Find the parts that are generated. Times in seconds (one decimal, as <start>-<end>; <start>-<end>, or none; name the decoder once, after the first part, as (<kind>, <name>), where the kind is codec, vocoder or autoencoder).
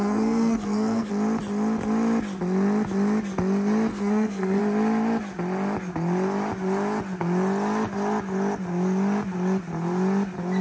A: 0.0-1.1 (codec, SNAC); 3.9-4.6